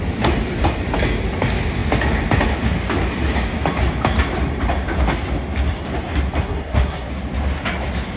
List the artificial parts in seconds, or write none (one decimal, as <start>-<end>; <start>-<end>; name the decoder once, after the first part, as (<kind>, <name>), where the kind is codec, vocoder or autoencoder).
6.4-7.1 (codec, SNAC)